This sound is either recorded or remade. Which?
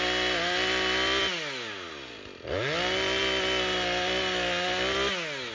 recorded